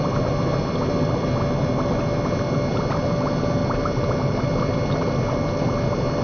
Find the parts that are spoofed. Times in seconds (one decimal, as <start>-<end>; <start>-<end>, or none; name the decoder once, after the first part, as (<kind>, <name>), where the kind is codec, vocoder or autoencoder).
none